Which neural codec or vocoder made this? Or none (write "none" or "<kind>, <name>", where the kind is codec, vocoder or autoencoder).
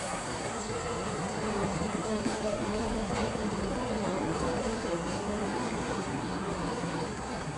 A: codec, SNAC